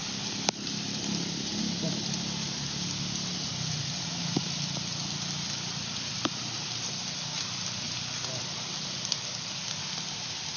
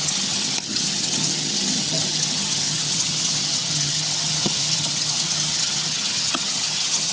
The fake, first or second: second